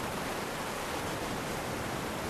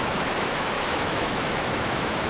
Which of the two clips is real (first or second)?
first